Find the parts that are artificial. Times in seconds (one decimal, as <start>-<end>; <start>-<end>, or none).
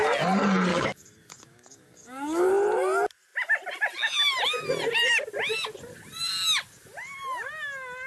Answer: 0.7-2.5